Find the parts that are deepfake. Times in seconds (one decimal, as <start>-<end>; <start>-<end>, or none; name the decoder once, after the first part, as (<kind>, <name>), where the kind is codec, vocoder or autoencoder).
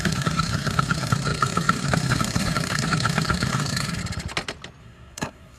0.0-4.0 (codec, SNAC); 4.8-5.6